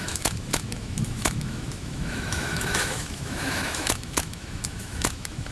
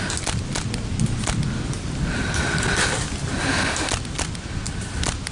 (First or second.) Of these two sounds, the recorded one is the second